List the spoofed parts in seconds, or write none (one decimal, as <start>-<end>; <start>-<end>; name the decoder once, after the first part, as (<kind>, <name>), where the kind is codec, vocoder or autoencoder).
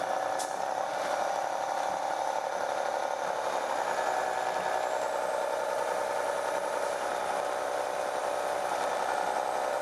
none